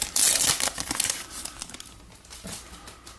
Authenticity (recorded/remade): recorded